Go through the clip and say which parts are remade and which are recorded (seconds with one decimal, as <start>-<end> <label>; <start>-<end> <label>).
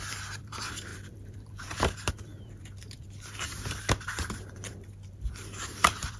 0.0-6.2 remade